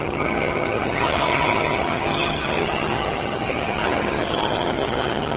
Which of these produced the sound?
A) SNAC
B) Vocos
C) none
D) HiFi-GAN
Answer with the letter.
D